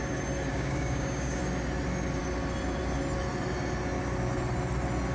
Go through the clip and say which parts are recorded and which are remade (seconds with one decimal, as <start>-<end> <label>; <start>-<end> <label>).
0.0-0.5 recorded; 0.5-1.4 remade; 1.4-5.1 recorded